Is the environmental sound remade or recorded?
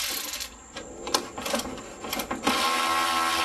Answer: recorded